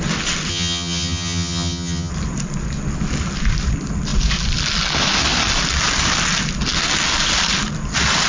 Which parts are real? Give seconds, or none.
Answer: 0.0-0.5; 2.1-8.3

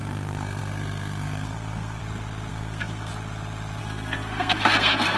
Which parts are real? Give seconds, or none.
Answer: 2.0-2.5; 3.1-3.8

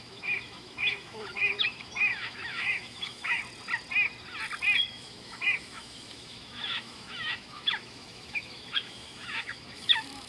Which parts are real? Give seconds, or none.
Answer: 3.4-4.9

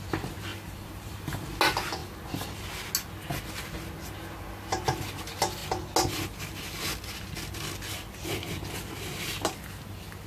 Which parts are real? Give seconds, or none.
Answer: 0.0-0.5; 1.3-10.3

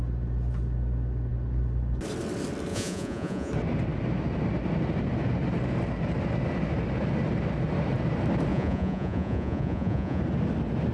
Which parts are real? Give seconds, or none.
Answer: 0.0-2.7; 3.5-8.5; 10.2-10.9

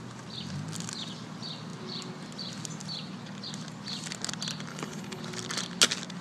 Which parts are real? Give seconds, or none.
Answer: 0.0-4.7; 5.2-6.2

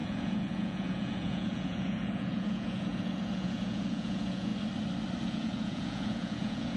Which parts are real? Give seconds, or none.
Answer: 4.5-5.2